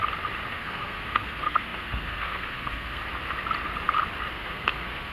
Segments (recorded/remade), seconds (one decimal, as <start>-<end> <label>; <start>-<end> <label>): 0.0-0.5 recorded; 0.5-3.0 remade; 3.0-4.3 recorded; 4.3-5.1 remade